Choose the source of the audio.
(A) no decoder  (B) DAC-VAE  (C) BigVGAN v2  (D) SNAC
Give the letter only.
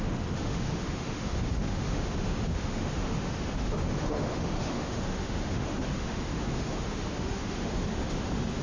B